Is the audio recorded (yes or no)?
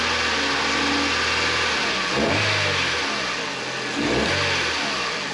yes